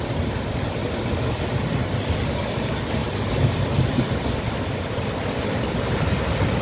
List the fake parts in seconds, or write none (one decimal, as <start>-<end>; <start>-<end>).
none